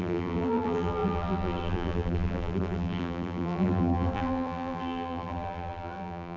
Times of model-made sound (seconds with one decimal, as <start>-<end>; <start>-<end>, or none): 0.0-6.4